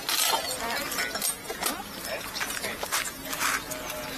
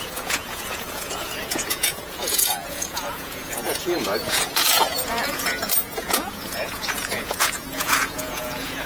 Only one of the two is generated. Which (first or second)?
second